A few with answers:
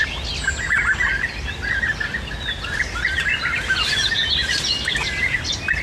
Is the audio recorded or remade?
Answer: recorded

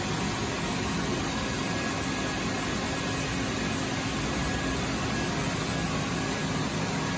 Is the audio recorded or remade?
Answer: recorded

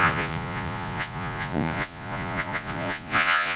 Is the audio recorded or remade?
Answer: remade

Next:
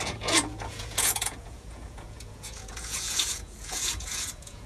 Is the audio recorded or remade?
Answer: remade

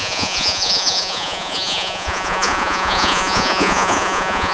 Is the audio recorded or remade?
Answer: remade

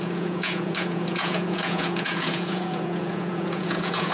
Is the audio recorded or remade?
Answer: remade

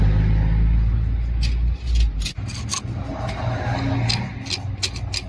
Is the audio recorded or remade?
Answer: recorded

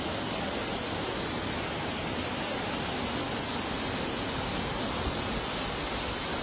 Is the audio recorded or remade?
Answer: recorded